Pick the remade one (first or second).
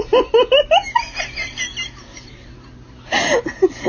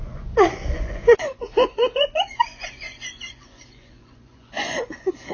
second